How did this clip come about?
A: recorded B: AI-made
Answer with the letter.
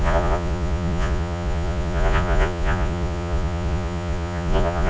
B